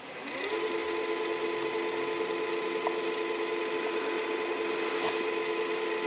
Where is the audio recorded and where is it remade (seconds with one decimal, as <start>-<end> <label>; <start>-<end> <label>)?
0.0-6.1 recorded